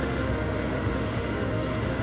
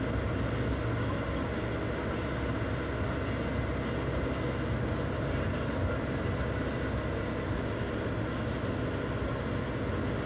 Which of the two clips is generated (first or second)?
first